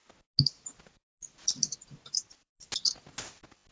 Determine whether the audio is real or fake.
real